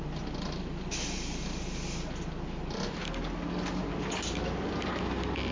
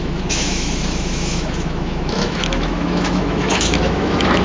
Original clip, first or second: first